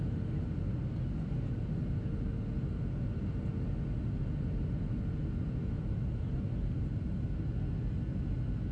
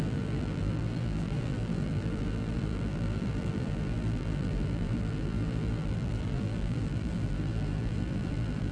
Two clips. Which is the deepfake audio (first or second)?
second